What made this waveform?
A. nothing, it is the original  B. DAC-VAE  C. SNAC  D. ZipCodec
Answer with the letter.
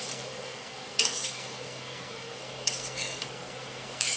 C